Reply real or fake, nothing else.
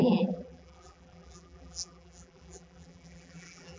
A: fake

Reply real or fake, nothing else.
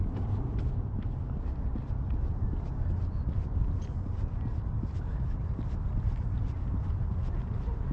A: real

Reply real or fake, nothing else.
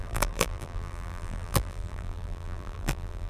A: fake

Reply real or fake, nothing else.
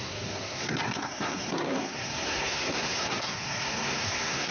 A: fake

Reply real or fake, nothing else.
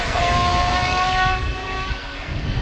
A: fake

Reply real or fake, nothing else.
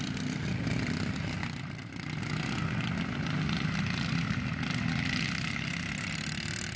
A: real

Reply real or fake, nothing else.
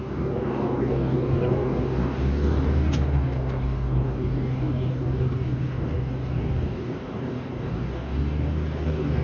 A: fake